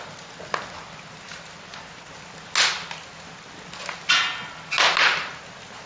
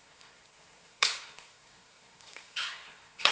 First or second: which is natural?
first